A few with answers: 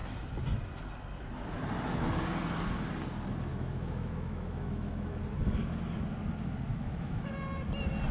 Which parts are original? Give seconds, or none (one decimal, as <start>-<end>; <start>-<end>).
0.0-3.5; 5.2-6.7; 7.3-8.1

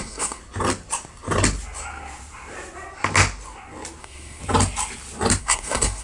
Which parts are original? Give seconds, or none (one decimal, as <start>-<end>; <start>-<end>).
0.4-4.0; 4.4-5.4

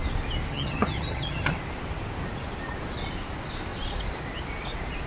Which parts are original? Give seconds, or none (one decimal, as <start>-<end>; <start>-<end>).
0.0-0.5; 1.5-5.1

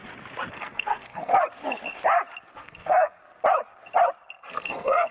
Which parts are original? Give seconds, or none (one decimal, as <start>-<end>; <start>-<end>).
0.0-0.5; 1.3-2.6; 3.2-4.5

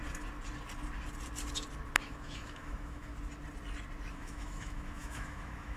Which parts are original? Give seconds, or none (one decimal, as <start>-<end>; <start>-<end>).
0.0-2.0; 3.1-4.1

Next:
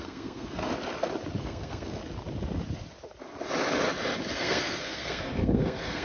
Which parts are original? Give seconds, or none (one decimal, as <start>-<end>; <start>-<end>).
0.6-1.4; 2.0-4.4